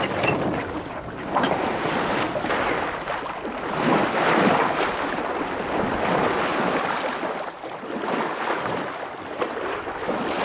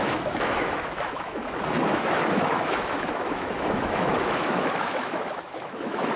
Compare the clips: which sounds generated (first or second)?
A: second